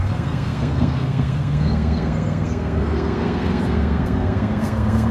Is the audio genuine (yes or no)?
no